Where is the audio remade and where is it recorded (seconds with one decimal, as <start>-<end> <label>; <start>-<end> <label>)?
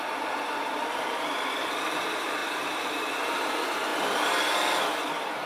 0.0-3.9 remade; 3.9-5.1 recorded; 5.1-5.5 remade